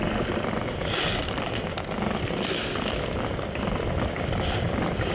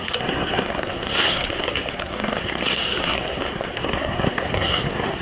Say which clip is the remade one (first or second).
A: second